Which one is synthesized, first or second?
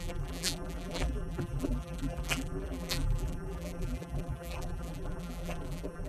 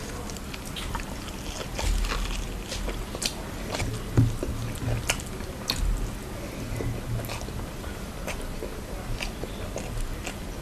first